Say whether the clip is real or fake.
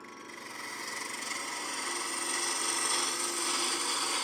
real